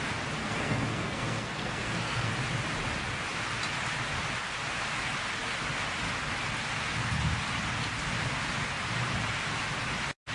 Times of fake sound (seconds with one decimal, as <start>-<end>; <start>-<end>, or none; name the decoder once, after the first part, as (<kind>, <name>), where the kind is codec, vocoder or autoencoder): 0.4-2.3 (codec, SNAC)